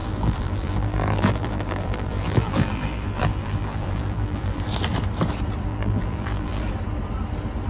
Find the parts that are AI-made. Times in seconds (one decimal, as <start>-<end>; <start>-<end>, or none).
0.0-4.6; 5.7-6.6